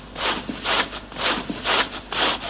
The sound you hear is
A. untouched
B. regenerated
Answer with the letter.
A